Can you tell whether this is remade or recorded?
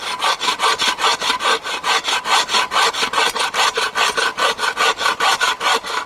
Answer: recorded